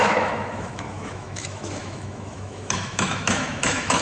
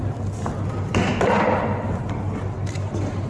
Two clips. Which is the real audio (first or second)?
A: second